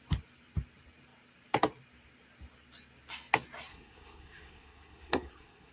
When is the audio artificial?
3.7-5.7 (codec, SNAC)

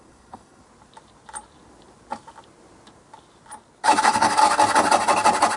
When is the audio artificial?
0.0-0.6 (codec, SNAC); 4.0-4.4

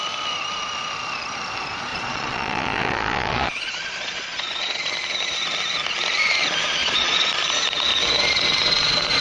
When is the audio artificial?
1.9-4.9 (vocoder, Vocos); 6.8-7.3